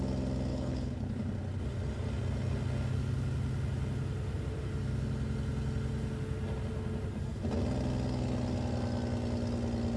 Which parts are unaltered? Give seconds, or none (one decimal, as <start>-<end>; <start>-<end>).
0.0-0.5; 1.3-10.0